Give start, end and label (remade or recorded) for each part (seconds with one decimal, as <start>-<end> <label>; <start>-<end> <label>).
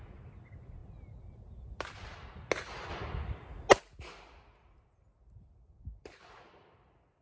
0.0-7.2 recorded